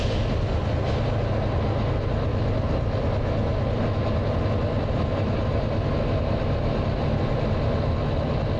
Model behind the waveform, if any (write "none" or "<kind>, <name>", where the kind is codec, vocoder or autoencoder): none